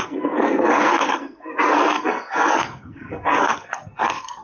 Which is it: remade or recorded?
remade